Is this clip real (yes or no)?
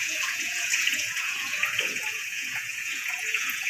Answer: no